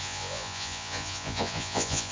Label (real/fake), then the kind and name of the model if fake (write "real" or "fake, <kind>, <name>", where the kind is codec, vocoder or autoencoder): fake, vocoder, Vocos